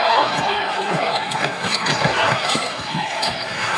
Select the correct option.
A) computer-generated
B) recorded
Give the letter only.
A